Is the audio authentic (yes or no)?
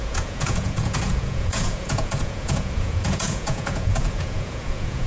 no